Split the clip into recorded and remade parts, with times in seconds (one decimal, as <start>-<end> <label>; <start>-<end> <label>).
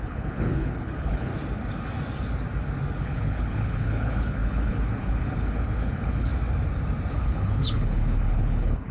0.0-1.3 remade; 1.3-3.0 recorded; 3.0-6.3 remade; 6.3-7.1 recorded; 7.1-8.9 remade